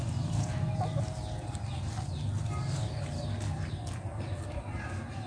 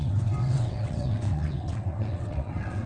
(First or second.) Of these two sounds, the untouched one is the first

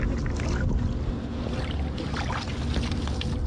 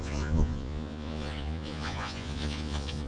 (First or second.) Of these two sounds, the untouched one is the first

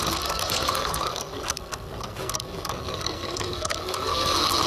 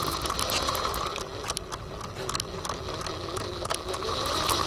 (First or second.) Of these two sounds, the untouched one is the second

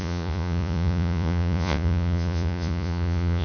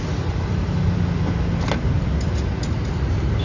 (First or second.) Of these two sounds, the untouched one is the second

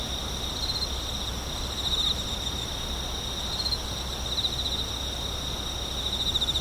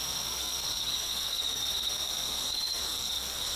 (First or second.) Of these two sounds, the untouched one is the first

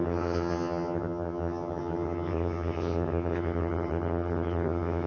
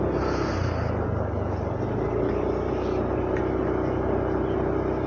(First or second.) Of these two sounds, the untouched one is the second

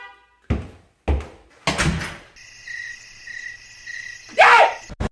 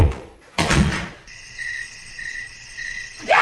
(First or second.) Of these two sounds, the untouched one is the first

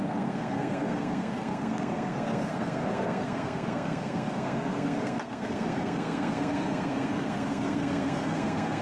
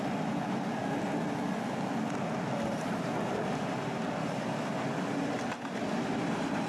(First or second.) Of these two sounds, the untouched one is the second